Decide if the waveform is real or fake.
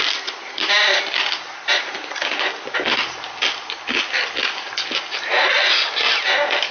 real